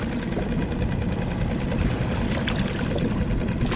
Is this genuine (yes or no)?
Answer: yes